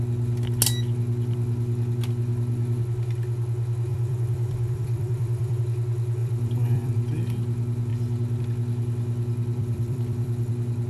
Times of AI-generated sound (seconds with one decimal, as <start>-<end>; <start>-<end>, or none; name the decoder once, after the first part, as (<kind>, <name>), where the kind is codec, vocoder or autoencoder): 3.9-5.6 (vocoder, BigVGAN v2); 6.2-6.9; 9.6-10.5